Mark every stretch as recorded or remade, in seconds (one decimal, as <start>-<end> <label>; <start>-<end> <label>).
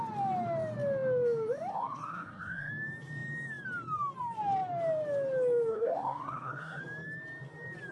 0.0-1.7 recorded; 1.7-2.7 remade; 2.7-5.7 recorded; 5.7-6.8 remade; 6.8-7.9 recorded